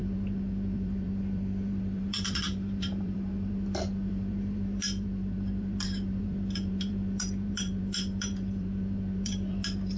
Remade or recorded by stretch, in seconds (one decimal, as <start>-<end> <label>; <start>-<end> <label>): 0.0-10.0 remade